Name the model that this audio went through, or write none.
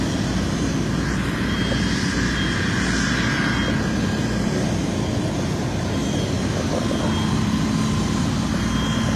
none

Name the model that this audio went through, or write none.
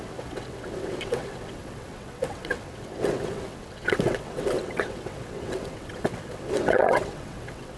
vocoder, WaveNeXt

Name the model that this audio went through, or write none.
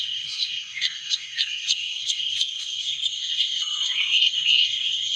codec, SNAC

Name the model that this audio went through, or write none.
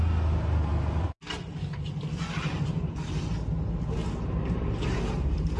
none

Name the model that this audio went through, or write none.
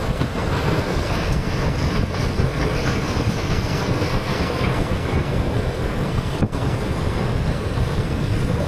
codec, SNAC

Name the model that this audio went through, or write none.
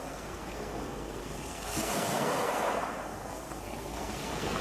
codec, SNAC